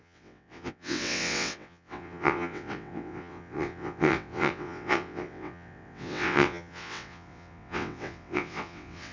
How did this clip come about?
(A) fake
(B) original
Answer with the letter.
A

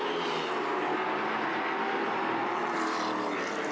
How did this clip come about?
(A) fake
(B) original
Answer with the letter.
B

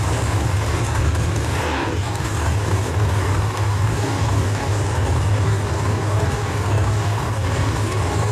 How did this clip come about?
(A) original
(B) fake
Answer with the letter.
B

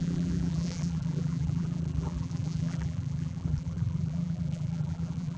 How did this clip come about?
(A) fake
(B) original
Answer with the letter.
A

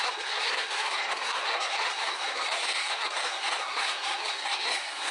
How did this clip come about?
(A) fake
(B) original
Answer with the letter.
A